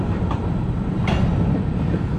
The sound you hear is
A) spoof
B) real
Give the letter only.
B